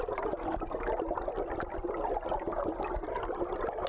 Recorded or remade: recorded